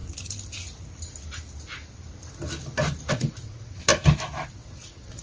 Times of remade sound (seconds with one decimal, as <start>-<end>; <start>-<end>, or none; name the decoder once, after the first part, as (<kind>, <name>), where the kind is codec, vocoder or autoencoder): 3.1-3.9 (vocoder, WaveNeXt); 4.5-5.2